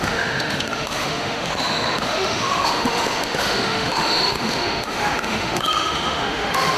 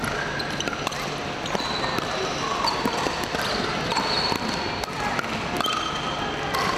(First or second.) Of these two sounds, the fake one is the first